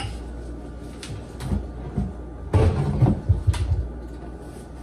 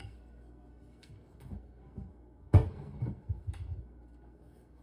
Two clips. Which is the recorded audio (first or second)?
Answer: first